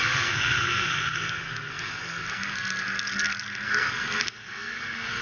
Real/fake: fake